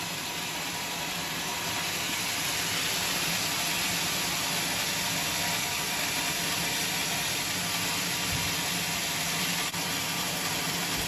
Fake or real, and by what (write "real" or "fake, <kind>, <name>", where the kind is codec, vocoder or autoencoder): real